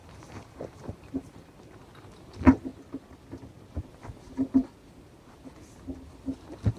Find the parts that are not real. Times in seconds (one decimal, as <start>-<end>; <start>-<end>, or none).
0.0-1.8